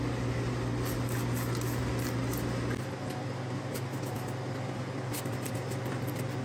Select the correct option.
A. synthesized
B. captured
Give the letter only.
B